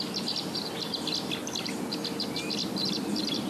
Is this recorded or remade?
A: recorded